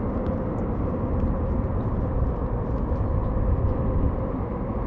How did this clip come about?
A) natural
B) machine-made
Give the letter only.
A